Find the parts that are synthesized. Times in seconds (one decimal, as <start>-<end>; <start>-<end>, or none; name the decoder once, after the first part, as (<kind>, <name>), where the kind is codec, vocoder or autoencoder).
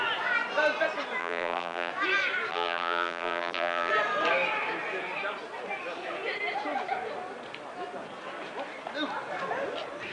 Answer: 1.2-1.9 (vocoder, BigVGAN v2); 2.5-3.9